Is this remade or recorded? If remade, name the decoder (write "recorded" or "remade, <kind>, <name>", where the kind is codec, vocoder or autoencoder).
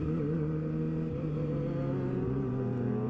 recorded